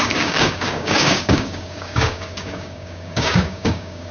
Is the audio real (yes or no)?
no